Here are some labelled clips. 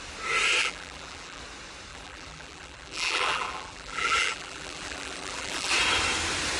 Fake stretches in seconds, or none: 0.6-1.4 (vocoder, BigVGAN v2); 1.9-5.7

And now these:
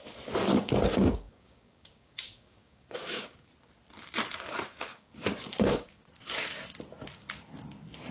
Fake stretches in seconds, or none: 0.5-3.5 (codec, DAC); 4.9-6.1

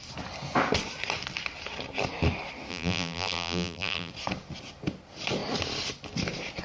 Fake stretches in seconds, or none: 2.7-4.1 (vocoder, BigVGAN v2)

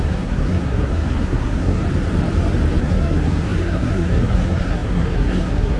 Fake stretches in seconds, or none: 0.0-1.8 (codec, SNAC); 2.8-5.8

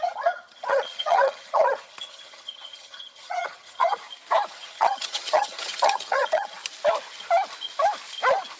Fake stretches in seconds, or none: 0.0-4.0 (vocoder, HiFi-GAN); 4.5-6.6